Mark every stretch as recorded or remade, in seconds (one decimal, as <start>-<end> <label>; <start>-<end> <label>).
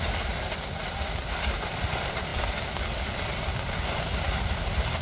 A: 0.0-5.0 remade